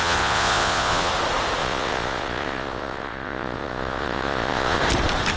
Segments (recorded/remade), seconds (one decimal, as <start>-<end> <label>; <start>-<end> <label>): 0.0-1.1 remade; 1.1-1.6 recorded; 1.6-4.8 remade; 4.8-5.4 recorded